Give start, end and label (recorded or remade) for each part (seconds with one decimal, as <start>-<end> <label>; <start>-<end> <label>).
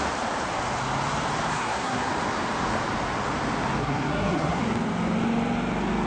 0.0-1.5 recorded; 1.5-2.1 remade; 2.1-3.8 recorded; 3.8-4.6 remade; 4.6-6.1 recorded